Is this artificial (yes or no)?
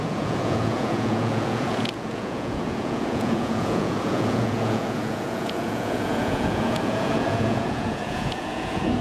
yes